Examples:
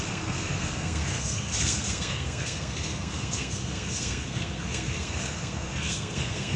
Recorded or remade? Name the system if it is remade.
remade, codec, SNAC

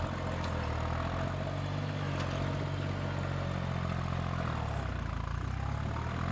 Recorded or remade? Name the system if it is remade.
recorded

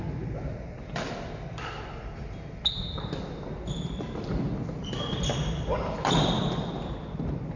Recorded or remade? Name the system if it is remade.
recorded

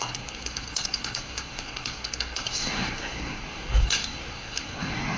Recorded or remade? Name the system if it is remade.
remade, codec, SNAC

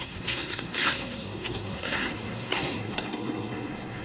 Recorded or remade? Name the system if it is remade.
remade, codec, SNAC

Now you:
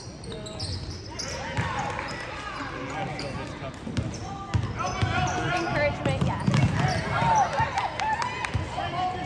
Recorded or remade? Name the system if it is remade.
recorded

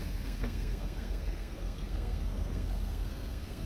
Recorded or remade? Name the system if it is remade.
remade, codec, SNAC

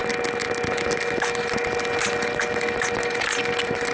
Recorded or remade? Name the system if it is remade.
recorded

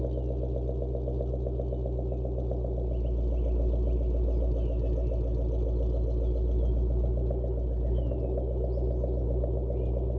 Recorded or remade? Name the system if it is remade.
recorded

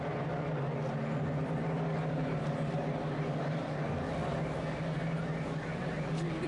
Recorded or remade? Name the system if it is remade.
recorded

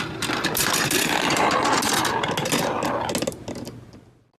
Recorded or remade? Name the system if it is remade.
recorded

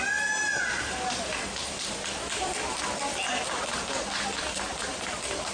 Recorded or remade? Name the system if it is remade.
recorded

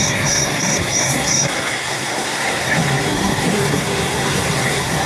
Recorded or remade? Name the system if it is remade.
remade, codec, SNAC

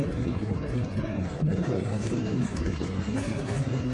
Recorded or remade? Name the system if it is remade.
remade, codec, SNAC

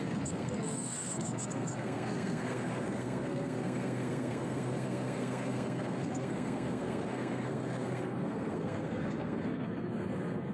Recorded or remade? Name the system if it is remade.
remade, codec, SNAC